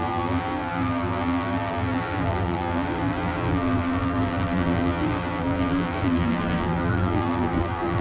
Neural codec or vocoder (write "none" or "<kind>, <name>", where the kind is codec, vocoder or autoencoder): vocoder, BigVGAN v2